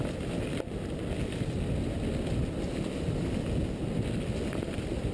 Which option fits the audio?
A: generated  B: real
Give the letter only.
B